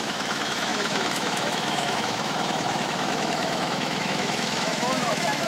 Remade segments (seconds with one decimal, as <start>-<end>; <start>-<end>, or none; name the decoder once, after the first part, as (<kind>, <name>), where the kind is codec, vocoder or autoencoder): 0.0-5.5 (autoencoder, DAC-VAE)

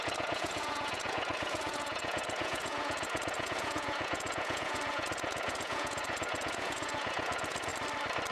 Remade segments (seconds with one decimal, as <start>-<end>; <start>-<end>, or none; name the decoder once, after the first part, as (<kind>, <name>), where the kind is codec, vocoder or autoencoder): 0.0-7.7 (vocoder, Vocos)

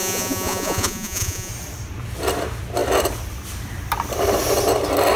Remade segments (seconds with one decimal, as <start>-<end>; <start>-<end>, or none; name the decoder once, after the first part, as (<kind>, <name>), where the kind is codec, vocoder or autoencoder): 0.0-1.5 (vocoder, Vocos)

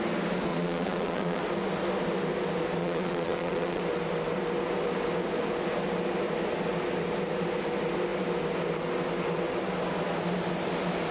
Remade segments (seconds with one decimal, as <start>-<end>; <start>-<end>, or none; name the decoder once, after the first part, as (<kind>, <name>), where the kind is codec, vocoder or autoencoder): 0.5-1.4 (vocoder, Vocos); 2.8-3.8

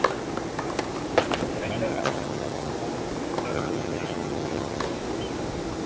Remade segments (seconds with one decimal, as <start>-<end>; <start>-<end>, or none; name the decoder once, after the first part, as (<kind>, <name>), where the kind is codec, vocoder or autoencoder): 1.9-2.7 (vocoder, HiFi-GAN); 3.5-4.8

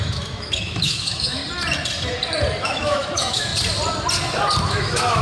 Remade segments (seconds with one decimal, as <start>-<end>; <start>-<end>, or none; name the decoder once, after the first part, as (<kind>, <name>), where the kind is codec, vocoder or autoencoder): 0.0-1.4 (autoencoder, DAC-VAE); 2.6-3.5; 4.6-5.2